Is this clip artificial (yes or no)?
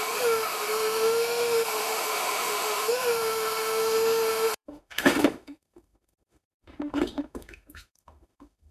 yes